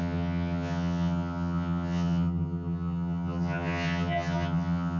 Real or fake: fake